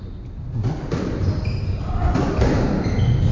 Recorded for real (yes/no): yes